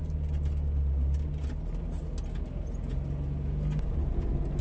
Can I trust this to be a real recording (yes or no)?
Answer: yes